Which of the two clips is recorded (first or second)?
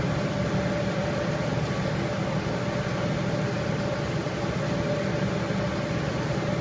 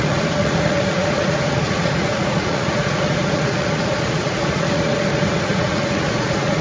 first